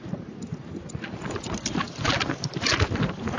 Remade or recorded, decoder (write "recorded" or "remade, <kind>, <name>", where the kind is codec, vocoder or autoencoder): recorded